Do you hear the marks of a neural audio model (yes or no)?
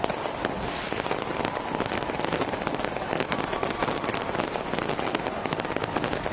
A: no